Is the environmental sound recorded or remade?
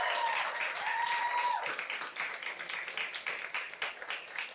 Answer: recorded